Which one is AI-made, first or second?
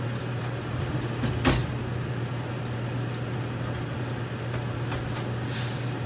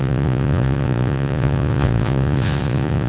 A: second